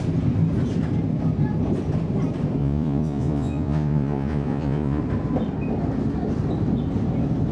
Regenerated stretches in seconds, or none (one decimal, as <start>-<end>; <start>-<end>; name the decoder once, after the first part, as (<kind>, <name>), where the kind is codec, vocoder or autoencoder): 2.6-5.0 (vocoder, Vocos)